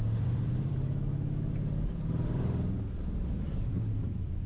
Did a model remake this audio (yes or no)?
yes